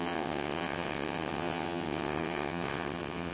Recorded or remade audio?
remade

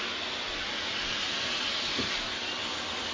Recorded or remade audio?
remade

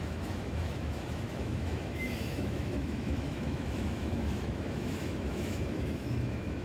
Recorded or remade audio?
remade